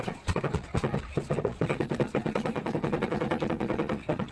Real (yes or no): no